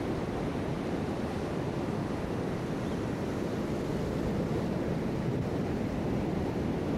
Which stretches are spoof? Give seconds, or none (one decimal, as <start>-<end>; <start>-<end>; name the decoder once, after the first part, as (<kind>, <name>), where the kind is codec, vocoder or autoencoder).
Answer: none